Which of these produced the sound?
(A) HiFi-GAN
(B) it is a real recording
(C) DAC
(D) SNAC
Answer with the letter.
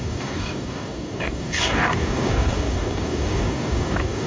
C